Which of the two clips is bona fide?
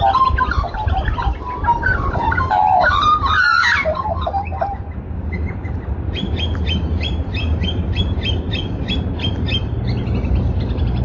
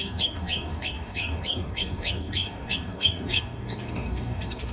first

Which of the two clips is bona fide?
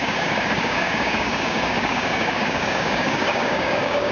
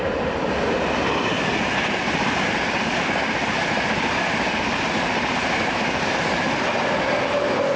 second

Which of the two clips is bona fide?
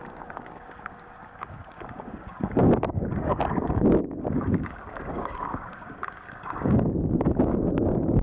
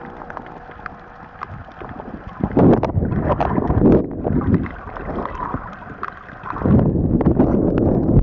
second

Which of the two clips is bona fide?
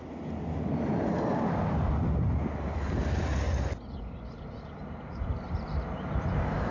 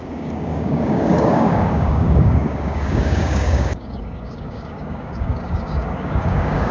first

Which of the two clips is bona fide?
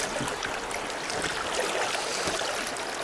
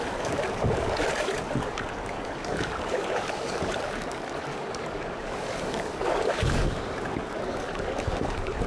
first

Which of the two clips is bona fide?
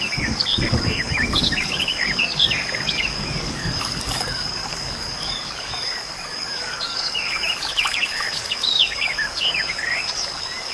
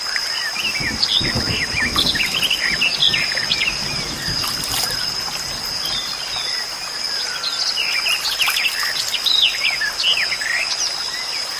second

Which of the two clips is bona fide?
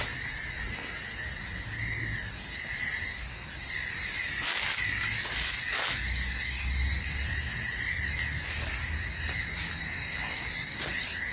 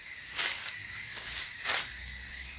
first